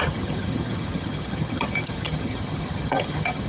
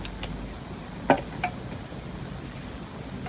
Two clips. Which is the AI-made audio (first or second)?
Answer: first